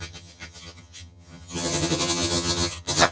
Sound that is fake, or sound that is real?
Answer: fake